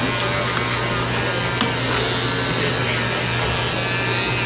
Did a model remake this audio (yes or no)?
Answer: no